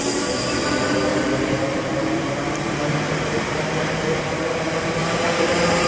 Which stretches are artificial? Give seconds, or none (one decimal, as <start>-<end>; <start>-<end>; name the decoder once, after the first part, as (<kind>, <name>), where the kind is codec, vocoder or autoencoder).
1.1-4.6 (vocoder, BigVGAN v2); 5.0-5.9